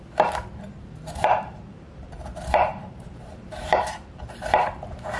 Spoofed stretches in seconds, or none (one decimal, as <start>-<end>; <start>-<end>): 1.2-4.3